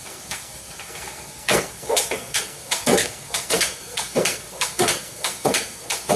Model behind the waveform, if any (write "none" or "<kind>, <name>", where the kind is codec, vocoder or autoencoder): codec, SNAC